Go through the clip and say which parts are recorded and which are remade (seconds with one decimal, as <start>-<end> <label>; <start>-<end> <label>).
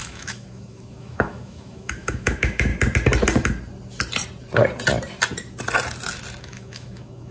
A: 0.0-2.7 remade; 2.7-6.4 recorded; 6.4-7.3 remade